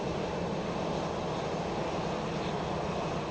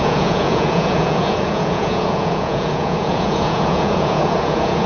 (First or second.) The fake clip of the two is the second